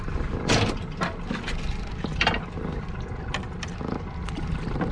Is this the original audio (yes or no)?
yes